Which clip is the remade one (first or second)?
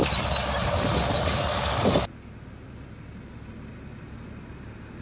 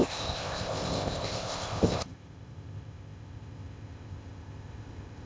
second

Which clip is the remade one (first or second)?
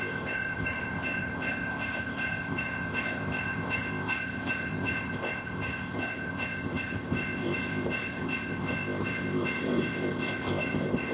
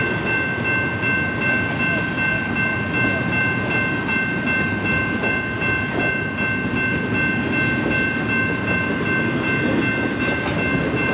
first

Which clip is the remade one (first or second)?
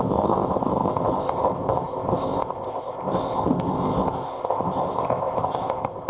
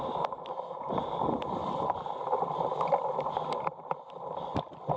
first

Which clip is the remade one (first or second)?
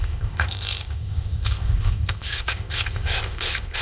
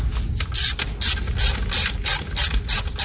first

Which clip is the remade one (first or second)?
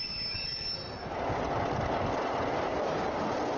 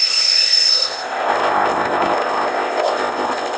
second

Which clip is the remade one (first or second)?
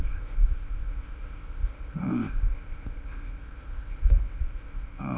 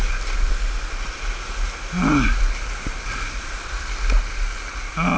first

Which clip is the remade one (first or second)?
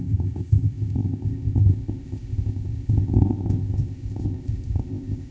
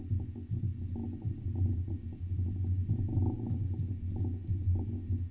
first